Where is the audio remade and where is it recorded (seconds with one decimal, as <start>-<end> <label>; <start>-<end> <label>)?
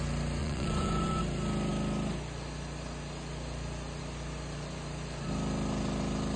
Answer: 0.0-0.4 recorded; 0.4-1.2 remade; 1.2-6.4 recorded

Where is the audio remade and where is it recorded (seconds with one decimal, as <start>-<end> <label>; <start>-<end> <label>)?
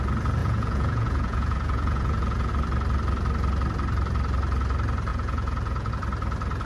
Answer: 0.0-0.4 recorded; 0.4-2.5 remade; 2.5-5.1 recorded; 5.1-5.9 remade; 5.9-6.7 recorded